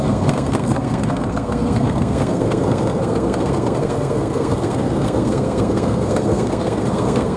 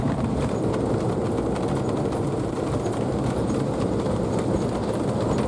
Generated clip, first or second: first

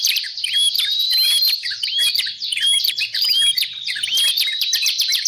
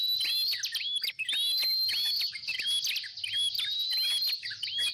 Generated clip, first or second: first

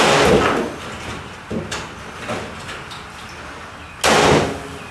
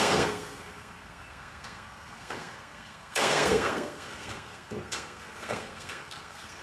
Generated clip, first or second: second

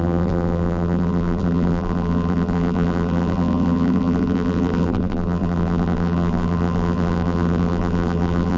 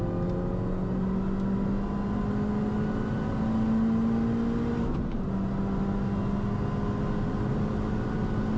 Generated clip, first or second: first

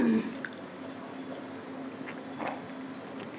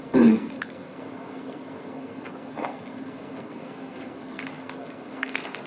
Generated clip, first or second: second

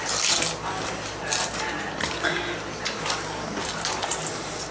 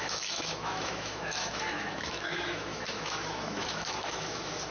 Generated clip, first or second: second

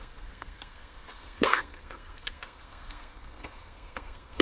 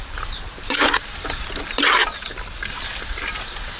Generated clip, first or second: first